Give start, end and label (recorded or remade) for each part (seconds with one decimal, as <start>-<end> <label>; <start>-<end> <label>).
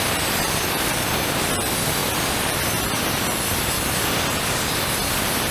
0.0-5.5 recorded